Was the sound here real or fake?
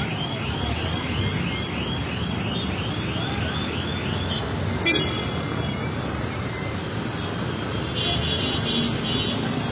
real